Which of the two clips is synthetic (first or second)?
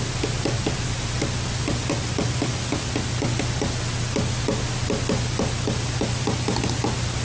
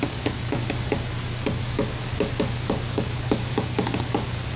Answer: second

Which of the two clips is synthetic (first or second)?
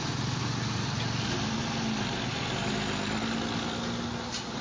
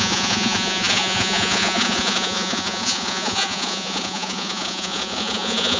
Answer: second